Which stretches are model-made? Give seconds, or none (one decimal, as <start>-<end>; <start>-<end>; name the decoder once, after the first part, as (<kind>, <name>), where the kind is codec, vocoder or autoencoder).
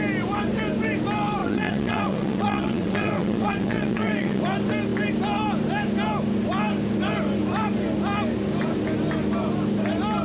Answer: 1.4-4.4 (vocoder, WaveNeXt)